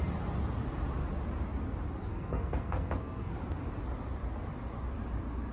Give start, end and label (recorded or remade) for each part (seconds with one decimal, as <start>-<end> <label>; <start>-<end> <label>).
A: 0.0-2.1 recorded; 2.1-3.3 remade; 3.3-5.5 recorded